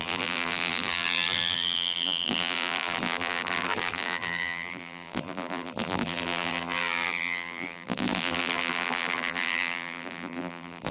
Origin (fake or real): fake